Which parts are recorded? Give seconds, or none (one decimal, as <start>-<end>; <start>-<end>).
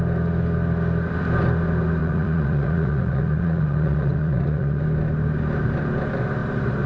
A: 0.0-2.0; 4.8-6.9